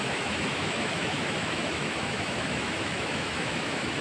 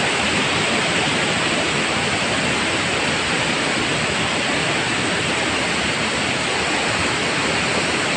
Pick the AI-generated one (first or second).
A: first